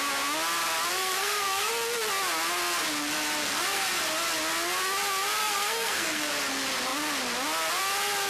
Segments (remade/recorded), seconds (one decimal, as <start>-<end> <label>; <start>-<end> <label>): 0.0-0.9 recorded; 0.9-1.7 remade; 1.7-3.4 recorded; 3.4-4.0 remade; 4.0-5.4 recorded; 5.4-6.3 remade; 6.3-8.3 recorded